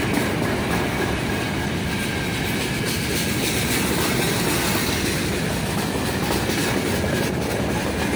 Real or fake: real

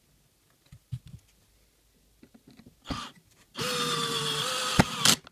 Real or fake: real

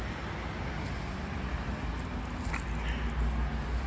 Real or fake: real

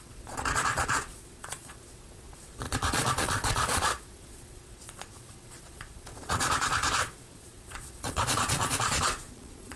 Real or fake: fake